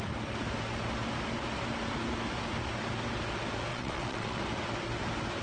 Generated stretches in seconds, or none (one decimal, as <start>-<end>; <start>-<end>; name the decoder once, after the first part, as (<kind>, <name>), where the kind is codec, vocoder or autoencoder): 3.7-4.4 (vocoder, WaveNeXt)